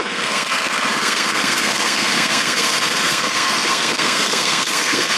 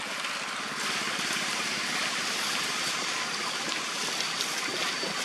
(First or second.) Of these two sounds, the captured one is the second